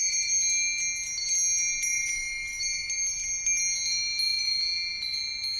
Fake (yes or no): no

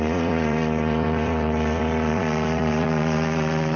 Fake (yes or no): yes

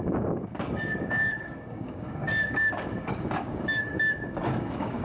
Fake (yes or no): yes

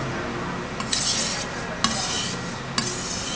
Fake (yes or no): no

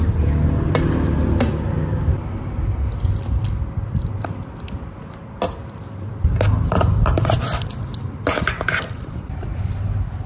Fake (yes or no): no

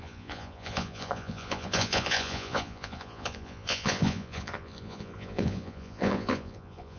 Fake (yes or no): yes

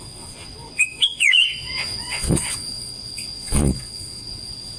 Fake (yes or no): yes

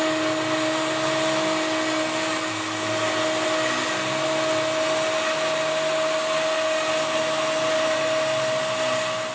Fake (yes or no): no